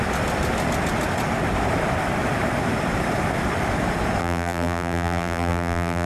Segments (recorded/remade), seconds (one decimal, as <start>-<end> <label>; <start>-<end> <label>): 0.0-4.2 recorded; 4.2-6.1 remade